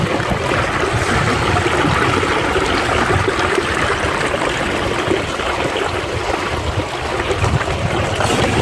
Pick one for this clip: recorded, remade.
recorded